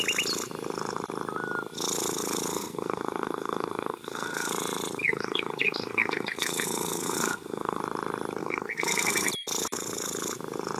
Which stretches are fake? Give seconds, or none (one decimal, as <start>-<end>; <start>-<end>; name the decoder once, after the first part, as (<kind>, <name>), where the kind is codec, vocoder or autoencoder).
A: 2.5-4.5 (codec, SNAC); 5.0-7.8; 8.4-9.3